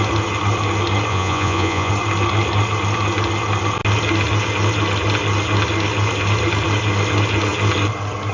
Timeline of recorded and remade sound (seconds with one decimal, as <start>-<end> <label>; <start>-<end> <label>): 0.0-1.1 recorded; 1.1-1.9 remade; 1.9-8.3 recorded